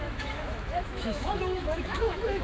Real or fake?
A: fake